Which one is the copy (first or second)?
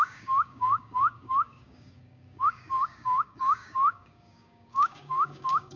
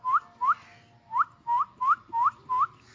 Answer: first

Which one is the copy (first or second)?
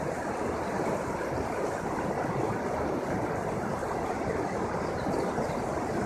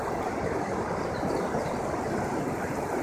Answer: first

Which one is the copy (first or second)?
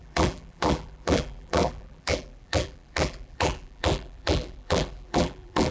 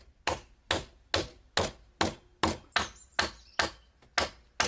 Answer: first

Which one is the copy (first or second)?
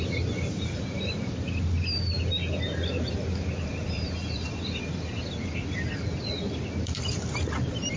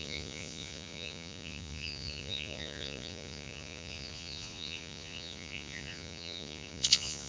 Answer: second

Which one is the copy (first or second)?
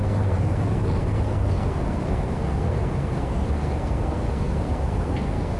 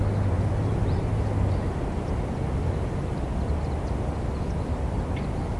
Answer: first